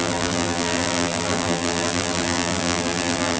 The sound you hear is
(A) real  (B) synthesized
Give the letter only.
B